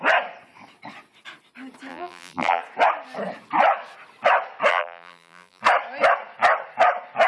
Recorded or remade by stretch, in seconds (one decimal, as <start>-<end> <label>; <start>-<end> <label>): 0.0-1.9 recorded; 1.9-2.6 remade; 2.6-4.7 recorded; 4.7-5.6 remade; 5.6-7.3 recorded

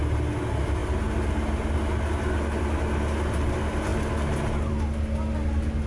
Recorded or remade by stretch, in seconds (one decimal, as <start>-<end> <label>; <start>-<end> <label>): 0.0-5.9 recorded

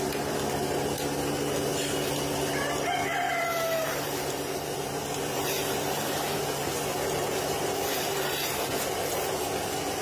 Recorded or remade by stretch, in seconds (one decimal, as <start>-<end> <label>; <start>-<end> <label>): 0.0-3.1 recorded; 3.1-6.4 remade; 6.4-10.0 recorded